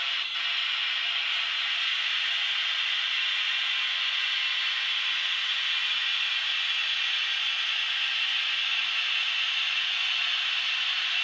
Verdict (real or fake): real